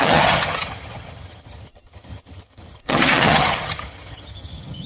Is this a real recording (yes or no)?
no